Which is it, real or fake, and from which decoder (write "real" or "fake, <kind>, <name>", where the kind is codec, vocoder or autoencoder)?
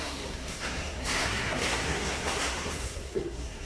fake, codec, SNAC